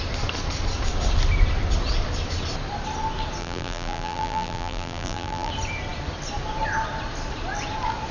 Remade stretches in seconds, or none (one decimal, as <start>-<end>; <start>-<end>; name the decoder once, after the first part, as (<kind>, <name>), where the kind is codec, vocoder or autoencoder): 3.4-5.5 (vocoder, BigVGAN v2)